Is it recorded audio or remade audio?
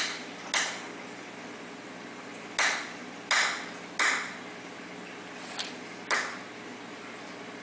recorded